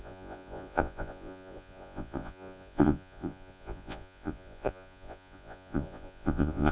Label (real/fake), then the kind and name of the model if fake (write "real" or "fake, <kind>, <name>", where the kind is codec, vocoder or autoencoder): fake, vocoder, Vocos